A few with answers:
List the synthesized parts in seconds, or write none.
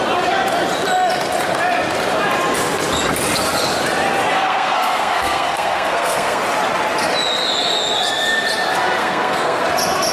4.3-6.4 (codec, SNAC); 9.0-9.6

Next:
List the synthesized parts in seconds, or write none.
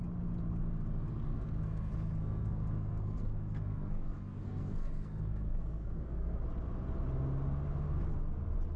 1.3-6.4 (codec, SNAC)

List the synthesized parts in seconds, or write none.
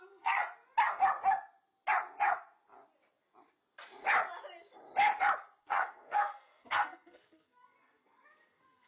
0.0-0.4 (codec, SNAC); 5.6-8.9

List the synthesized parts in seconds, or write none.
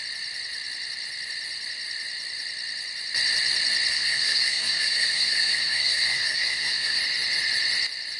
3.9-7.0 (codec, SNAC)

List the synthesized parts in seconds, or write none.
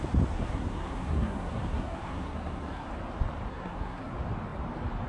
0.4-2.9 (codec, SNAC); 3.5-4.1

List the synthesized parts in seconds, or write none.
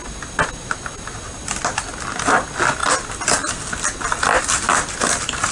none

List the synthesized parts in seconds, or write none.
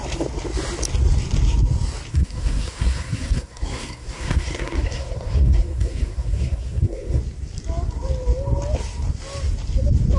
2.1-7.2 (codec, SNAC)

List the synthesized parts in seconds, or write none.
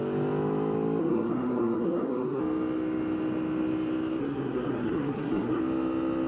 1.0-2.4 (codec, SNAC); 4.2-5.6